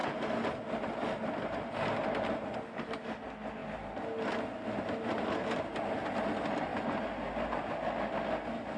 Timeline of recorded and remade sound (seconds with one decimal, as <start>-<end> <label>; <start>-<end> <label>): 0.0-8.8 recorded